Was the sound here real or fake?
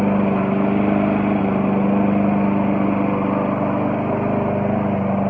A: real